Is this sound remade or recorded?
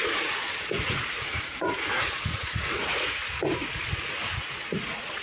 remade